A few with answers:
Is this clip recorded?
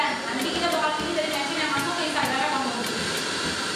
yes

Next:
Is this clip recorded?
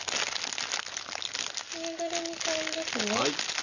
yes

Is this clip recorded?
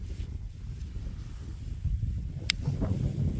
yes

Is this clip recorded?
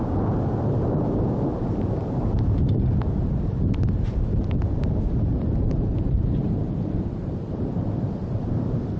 no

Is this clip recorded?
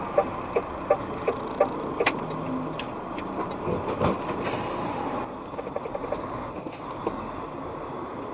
yes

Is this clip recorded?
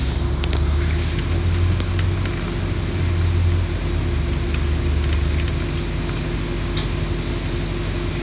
yes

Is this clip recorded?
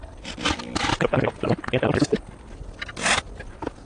yes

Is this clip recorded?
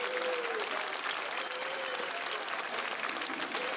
yes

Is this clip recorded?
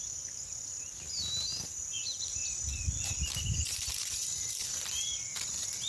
yes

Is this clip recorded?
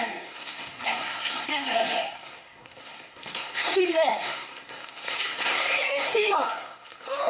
no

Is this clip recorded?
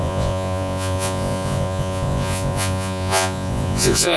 no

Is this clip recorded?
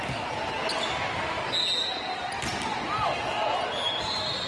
yes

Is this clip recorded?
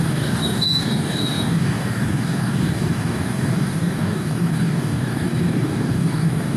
no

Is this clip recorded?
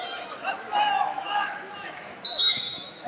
no